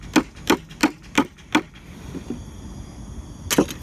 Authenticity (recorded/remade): recorded